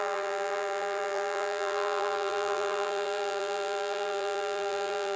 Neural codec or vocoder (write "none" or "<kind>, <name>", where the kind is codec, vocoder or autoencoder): vocoder, BigVGAN v2